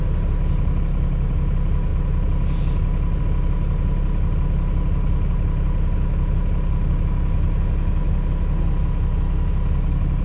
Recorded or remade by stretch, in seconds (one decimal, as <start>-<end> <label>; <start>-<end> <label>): 0.0-10.2 recorded